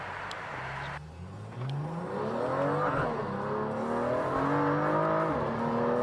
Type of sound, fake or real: real